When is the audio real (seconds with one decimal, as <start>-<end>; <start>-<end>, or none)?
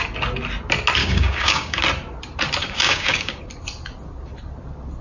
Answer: 0.0-1.0; 1.8-2.6; 3.4-5.0